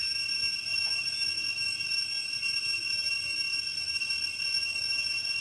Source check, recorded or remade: recorded